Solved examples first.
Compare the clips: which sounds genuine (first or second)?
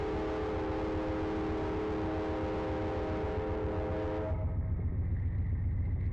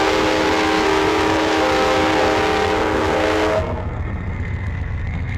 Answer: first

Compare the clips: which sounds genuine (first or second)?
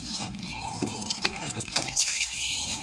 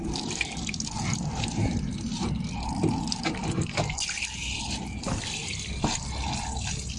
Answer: second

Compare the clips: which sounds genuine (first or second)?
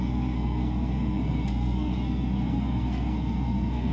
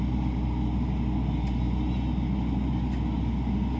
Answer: second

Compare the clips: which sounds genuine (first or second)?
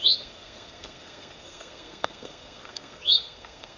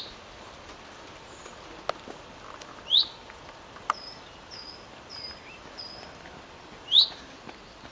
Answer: second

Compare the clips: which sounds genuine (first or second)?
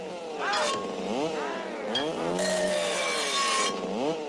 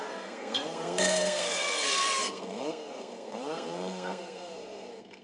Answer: first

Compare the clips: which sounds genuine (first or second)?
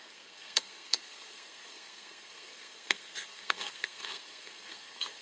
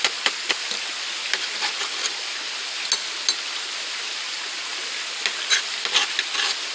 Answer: second